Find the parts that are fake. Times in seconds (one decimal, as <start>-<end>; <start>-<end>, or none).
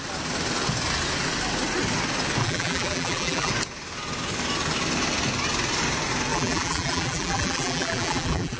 2.4-3.5; 6.3-8.6